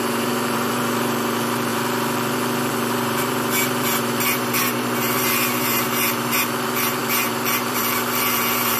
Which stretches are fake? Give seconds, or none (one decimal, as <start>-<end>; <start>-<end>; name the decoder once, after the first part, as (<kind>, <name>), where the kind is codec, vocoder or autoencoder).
0.0-8.8 (vocoder, BigVGAN v2)